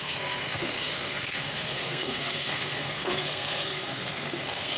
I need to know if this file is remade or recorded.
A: remade